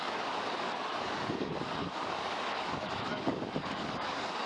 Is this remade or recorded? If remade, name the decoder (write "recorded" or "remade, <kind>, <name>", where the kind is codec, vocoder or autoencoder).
remade, codec, DAC